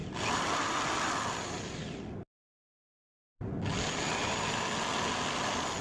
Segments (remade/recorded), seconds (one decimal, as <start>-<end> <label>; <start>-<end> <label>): 0.0-5.8 recorded